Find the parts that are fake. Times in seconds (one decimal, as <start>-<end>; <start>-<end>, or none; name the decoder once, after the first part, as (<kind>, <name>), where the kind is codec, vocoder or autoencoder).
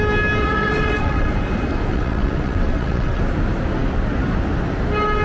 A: 0.4-1.3 (vocoder, WaveNeXt); 1.9-3.2